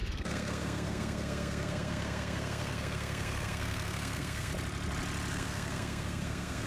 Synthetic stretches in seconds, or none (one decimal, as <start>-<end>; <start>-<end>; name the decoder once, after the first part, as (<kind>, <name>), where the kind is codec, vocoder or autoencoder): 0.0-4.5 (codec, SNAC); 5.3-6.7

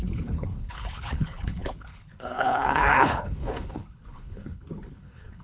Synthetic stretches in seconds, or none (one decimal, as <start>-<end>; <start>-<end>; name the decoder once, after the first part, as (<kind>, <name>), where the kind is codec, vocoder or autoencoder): 0.0-5.4 (codec, HILCodec)

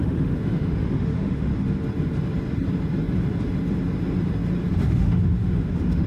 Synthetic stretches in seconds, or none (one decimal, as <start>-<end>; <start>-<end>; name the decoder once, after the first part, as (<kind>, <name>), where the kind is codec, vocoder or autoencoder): 0.0-1.5 (autoencoder, DAC-VAE); 4.8-6.1